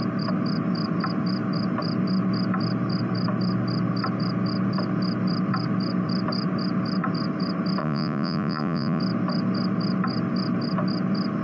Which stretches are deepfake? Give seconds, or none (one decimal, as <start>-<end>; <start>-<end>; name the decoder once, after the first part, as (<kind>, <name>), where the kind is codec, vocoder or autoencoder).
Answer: 7.8-9.0 (vocoder, Vocos)